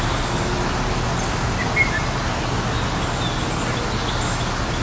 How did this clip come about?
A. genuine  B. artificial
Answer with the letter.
A